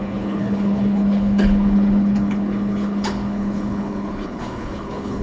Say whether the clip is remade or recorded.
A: remade